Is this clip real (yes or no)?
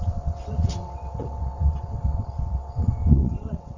no